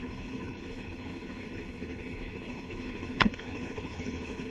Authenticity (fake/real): fake